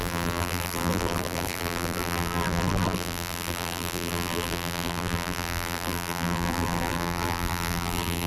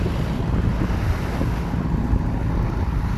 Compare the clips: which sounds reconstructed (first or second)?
first